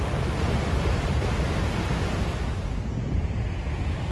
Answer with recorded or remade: recorded